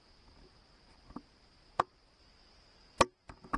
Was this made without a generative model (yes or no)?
yes